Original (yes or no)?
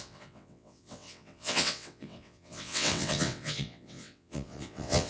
no